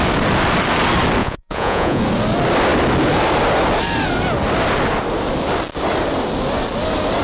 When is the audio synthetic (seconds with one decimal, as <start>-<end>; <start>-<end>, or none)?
1.2-2.0